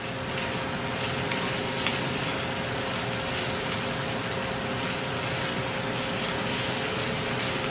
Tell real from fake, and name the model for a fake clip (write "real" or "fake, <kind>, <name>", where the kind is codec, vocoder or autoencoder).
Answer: real